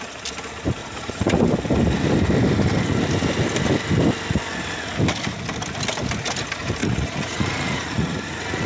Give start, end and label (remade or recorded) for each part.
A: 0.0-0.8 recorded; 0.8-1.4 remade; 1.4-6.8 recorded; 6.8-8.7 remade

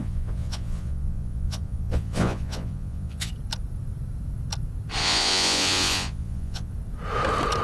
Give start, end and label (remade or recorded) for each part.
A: 0.0-3.3 remade; 3.3-5.0 recorded; 5.0-6.7 remade; 6.7-7.6 recorded

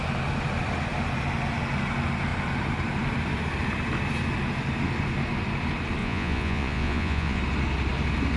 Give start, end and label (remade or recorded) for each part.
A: 0.0-6.0 recorded; 6.0-7.4 remade; 7.4-8.4 recorded